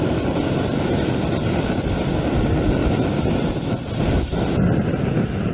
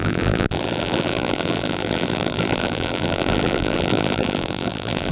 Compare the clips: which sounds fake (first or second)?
second